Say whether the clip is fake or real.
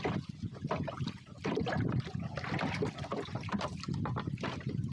real